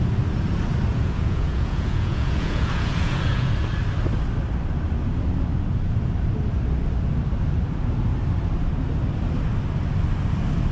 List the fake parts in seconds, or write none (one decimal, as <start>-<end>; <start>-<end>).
0.9-3.5